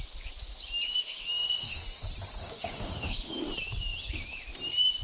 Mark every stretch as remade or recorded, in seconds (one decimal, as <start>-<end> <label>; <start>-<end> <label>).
0.0-0.9 recorded; 0.9-1.8 remade; 1.8-2.4 recorded; 2.4-3.3 remade; 3.3-5.0 recorded